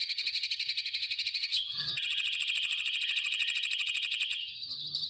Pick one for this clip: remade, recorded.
remade